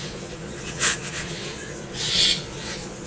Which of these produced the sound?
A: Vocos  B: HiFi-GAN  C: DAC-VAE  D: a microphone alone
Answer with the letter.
A